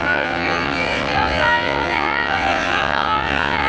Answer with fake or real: fake